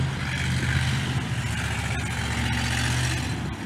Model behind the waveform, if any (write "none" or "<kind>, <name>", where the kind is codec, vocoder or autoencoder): none